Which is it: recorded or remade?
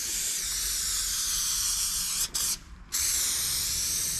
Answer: recorded